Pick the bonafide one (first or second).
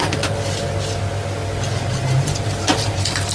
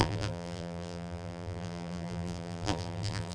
first